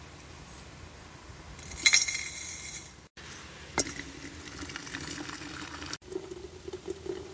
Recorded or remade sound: recorded